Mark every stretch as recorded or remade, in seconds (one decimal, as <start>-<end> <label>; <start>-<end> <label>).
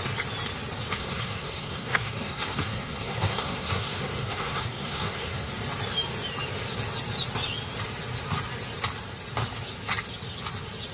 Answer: 0.0-1.0 recorded; 1.0-5.5 remade; 5.5-10.9 recorded